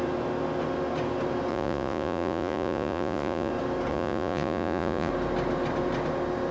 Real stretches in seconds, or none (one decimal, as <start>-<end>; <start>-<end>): 0.0-1.5; 3.5-3.9; 5.1-6.5